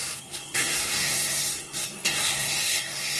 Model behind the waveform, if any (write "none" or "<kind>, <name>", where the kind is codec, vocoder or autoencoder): codec, SNAC